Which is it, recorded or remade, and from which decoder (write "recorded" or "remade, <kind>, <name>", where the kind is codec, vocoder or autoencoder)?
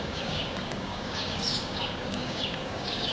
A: remade, codec, DAC